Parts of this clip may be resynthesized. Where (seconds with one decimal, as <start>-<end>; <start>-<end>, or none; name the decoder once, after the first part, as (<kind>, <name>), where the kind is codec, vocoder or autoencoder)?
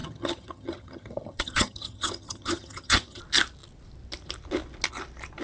0.0-3.2 (vocoder, HiFi-GAN)